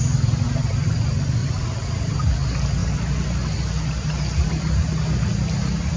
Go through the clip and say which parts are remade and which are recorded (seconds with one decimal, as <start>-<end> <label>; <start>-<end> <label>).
0.0-1.4 recorded; 1.4-2.2 remade; 2.2-6.0 recorded